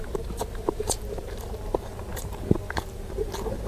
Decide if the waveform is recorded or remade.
remade